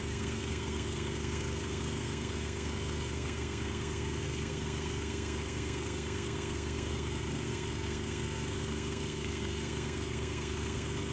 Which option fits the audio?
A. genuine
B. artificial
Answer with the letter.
B